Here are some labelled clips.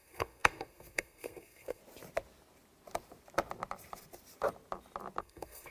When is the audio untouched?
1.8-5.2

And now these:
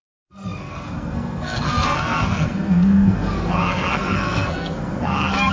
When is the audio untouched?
none